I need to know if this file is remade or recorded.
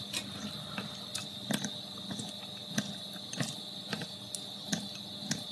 recorded